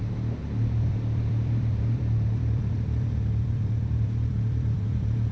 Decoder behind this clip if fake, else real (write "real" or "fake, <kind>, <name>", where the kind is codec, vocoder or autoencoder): fake, vocoder, BigVGAN v2